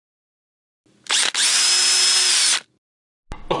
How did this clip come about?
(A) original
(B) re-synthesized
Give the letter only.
A